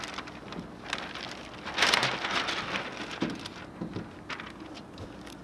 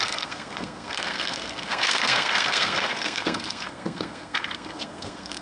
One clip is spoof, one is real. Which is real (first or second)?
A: first